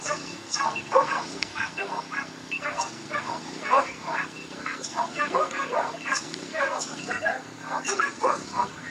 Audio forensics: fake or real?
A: fake